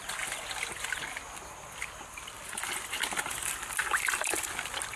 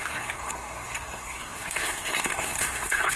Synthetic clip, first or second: second